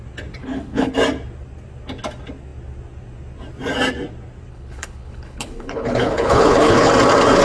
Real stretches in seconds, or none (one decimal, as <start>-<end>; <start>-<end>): 0.0-0.4; 0.9-4.5; 6.9-7.4